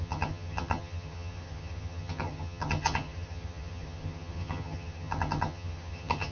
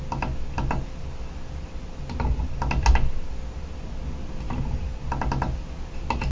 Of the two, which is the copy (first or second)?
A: first